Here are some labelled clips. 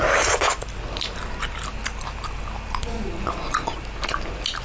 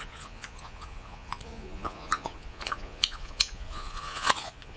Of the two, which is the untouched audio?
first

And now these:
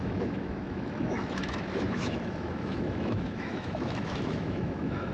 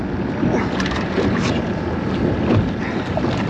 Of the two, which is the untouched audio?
second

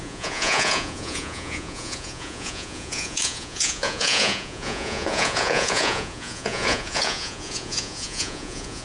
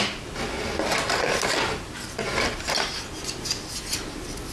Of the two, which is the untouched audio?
second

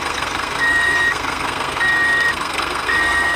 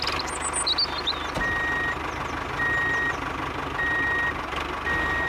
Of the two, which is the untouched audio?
second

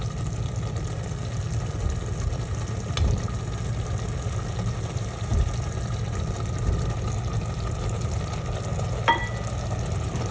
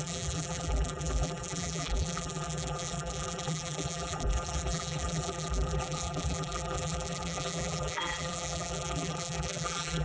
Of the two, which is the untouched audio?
first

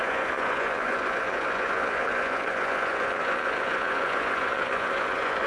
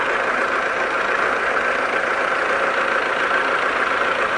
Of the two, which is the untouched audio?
second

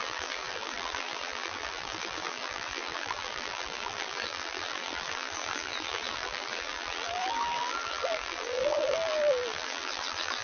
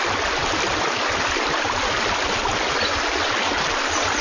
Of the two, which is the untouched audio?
second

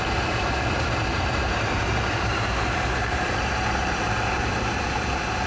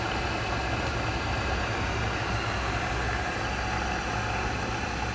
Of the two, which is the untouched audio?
second